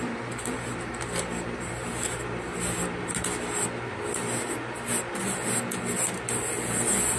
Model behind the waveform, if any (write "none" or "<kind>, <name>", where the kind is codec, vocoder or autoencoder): none